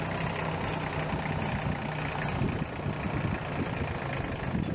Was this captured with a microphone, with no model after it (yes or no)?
yes